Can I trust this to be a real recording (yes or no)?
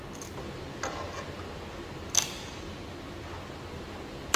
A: yes